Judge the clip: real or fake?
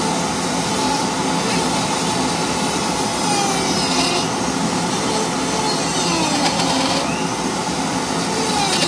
real